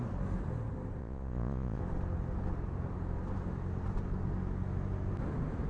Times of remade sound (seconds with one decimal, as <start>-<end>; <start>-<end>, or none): 1.0-1.8